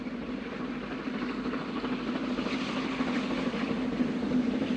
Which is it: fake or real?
real